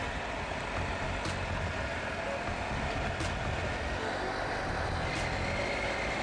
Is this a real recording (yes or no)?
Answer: yes